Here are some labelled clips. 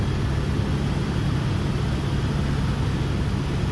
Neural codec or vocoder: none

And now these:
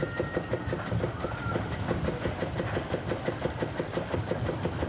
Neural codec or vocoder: none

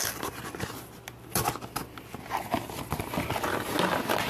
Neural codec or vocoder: none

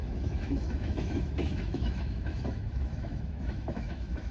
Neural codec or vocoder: autoencoder, DAC-VAE